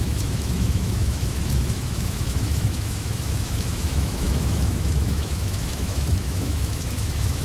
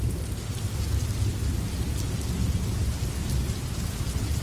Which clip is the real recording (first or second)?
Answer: second